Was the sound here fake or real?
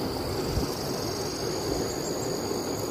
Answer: real